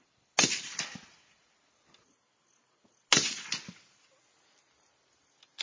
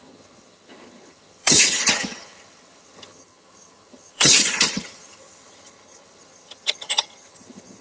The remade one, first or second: second